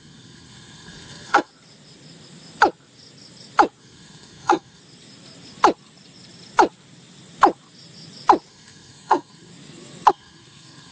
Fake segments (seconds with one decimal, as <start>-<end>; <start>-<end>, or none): 0.0-1.5; 3.8-4.8; 8.5-9.5; 10.1-10.9